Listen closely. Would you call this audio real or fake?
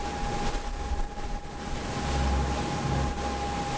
real